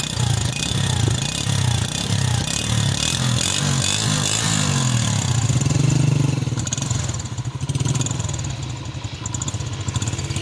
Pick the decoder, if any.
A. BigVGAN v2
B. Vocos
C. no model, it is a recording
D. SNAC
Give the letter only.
C